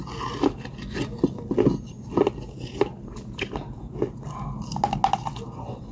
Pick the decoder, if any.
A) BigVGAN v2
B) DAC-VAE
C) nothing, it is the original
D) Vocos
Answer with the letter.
C